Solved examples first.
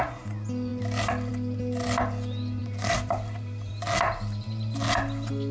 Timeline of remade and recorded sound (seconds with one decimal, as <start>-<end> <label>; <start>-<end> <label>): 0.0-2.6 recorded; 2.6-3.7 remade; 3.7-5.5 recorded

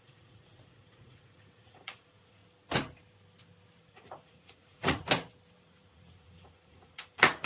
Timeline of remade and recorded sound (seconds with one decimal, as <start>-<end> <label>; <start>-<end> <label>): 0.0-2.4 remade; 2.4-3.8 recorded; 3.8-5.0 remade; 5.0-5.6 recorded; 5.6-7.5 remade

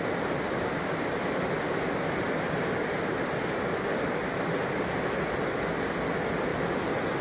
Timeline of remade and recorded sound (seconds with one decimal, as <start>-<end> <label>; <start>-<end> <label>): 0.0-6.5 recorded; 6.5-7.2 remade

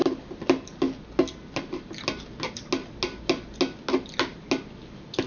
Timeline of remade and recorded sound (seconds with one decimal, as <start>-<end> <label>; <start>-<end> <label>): 0.0-5.3 recorded

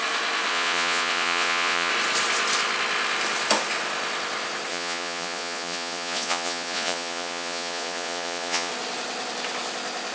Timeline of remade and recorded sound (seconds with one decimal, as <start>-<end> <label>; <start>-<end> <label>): 0.0-0.5 recorded; 0.5-1.9 remade; 1.9-4.7 recorded; 4.7-8.7 remade; 8.7-10.1 recorded

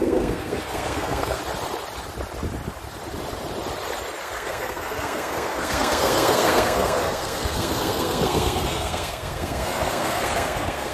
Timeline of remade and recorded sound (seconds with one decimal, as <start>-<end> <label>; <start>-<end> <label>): 0.0-1.4 remade; 1.4-4.2 recorded; 4.2-10.9 remade